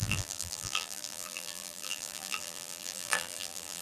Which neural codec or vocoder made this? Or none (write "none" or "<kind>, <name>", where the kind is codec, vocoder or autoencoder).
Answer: vocoder, BigVGAN v2